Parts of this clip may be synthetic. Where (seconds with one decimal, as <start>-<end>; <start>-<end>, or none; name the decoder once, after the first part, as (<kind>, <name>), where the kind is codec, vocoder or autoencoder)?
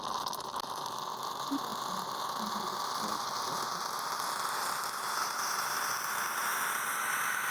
none